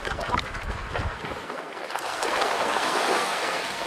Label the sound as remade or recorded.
remade